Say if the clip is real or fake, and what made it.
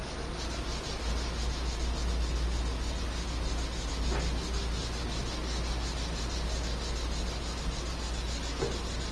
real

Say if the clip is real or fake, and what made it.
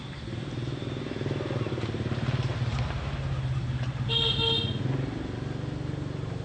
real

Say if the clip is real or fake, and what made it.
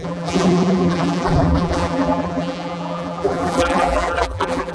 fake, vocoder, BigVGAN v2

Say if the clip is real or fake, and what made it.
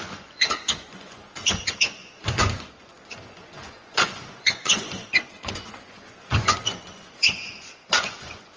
fake, vocoder, Vocos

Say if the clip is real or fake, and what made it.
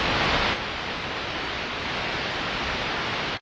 real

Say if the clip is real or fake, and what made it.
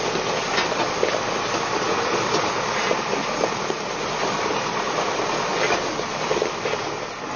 real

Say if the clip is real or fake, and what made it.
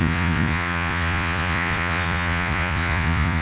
fake, vocoder, Vocos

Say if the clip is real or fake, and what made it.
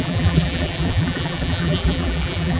fake, vocoder, BigVGAN v2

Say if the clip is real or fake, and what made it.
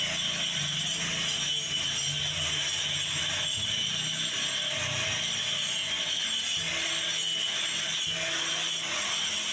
real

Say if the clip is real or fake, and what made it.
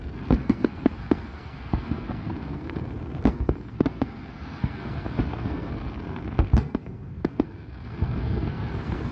fake, codec, SNAC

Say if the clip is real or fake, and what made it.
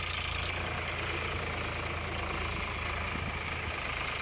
real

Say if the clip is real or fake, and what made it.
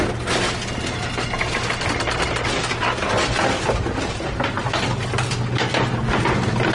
fake, vocoder, BigVGAN v2